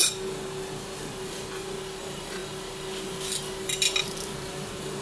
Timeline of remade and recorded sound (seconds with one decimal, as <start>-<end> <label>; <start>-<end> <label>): 0.0-2.0 recorded; 2.0-2.4 remade; 2.4-4.0 recorded; 4.0-5.0 remade